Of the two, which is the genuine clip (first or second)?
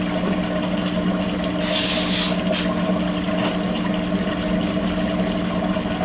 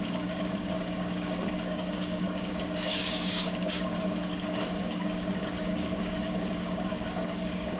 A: first